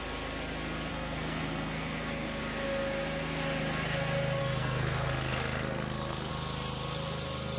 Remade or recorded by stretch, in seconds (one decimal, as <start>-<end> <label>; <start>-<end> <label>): 0.0-0.9 recorded; 0.9-2.4 remade; 2.4-4.4 recorded; 4.4-6.3 remade; 6.3-7.6 recorded